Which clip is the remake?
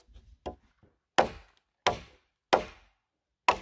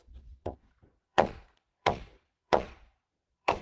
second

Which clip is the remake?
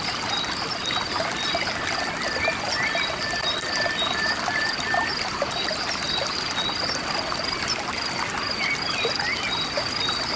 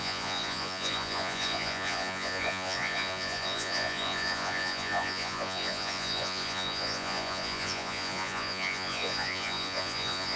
second